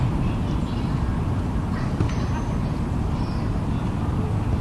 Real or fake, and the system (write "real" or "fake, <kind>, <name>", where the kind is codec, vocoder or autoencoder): real